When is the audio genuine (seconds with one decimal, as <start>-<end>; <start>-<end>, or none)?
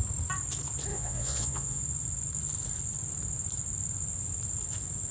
0.0-0.9; 1.8-5.1